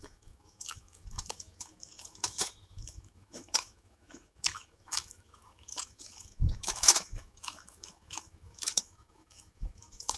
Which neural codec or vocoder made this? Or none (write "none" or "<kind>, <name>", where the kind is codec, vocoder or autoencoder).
autoencoder, DAC-VAE